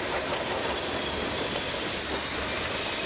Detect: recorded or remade recorded